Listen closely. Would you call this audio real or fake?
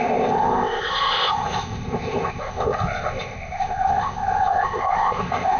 fake